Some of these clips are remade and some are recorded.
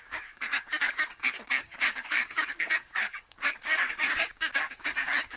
remade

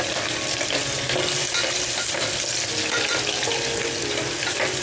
recorded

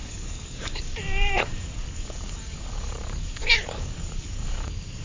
remade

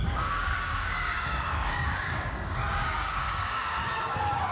remade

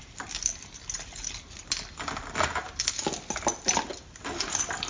recorded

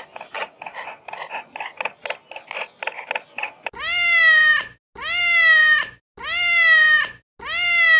recorded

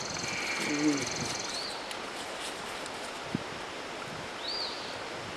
recorded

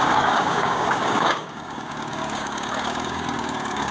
remade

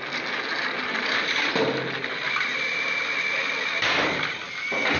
recorded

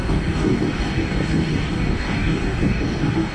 remade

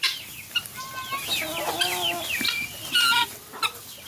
recorded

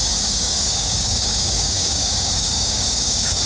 remade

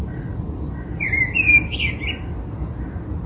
recorded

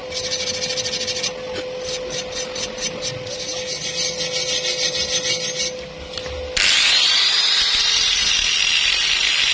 recorded